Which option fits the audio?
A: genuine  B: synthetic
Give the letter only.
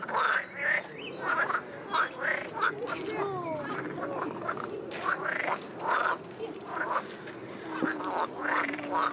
A